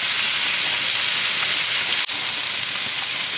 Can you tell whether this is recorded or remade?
recorded